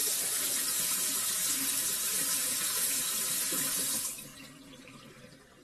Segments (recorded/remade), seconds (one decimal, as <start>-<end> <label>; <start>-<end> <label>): 0.0-2.3 recorded; 2.3-3.1 remade; 3.1-5.6 recorded